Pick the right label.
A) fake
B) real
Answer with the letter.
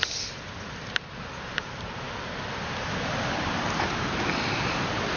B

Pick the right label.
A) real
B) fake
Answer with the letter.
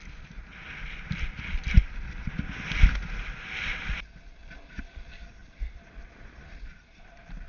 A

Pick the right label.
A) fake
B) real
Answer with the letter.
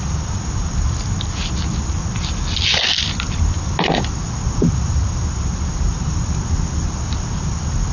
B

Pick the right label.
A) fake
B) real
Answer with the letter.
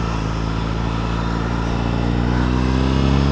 B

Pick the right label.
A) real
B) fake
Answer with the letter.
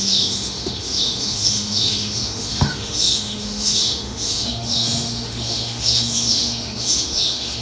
B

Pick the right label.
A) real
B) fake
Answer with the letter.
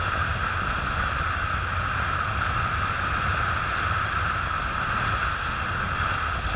A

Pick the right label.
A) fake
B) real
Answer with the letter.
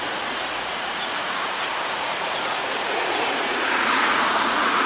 A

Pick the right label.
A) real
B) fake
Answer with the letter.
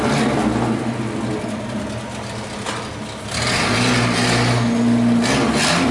A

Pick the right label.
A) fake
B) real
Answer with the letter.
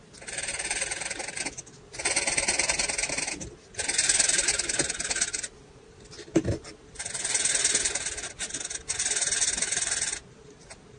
B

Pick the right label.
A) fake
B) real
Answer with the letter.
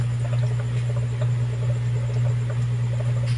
B